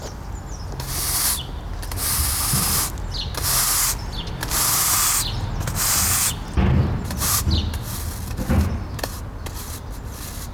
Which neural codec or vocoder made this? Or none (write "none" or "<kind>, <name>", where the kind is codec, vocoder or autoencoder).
none